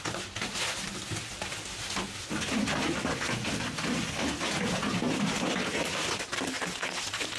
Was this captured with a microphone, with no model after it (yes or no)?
yes